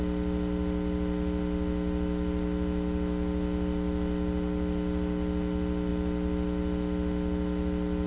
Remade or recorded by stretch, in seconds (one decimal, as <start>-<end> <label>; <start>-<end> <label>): 0.0-8.1 recorded